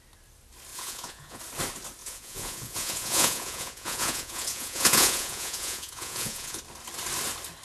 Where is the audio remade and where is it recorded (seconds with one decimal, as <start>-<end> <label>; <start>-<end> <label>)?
0.0-0.7 recorded; 0.7-1.4 remade; 1.4-2.0 recorded; 2.0-6.6 remade; 6.6-7.6 recorded